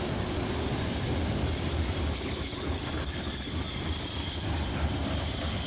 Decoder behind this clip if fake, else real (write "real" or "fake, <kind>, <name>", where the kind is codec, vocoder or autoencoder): real